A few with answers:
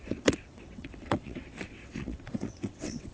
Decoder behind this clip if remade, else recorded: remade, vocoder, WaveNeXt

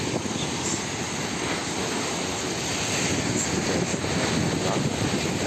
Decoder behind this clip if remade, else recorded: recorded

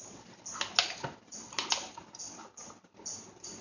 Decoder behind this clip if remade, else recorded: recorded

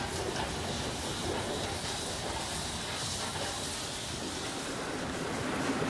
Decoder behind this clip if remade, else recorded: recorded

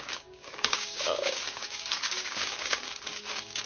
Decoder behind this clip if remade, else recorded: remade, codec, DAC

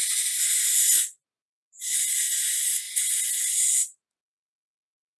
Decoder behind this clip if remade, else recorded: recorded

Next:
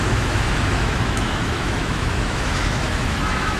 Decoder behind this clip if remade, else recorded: remade, autoencoder, DAC-VAE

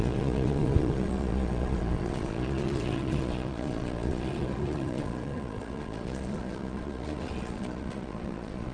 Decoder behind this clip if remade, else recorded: remade, vocoder, Vocos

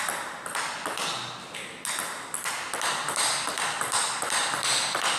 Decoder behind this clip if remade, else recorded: recorded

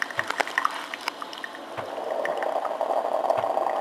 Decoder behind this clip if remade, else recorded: recorded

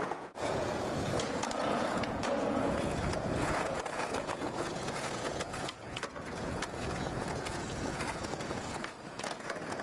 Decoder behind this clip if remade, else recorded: remade, vocoder, Vocos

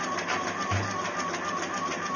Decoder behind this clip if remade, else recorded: recorded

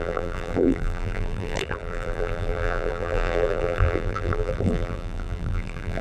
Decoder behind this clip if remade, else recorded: remade, vocoder, BigVGAN v2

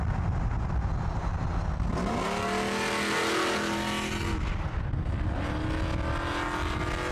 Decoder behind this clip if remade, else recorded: recorded